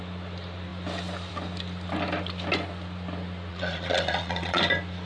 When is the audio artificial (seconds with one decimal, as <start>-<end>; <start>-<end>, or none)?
3.5-4.6